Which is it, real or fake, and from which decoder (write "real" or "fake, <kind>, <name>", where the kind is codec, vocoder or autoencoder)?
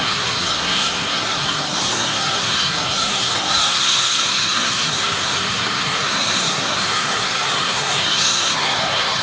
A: fake, codec, SNAC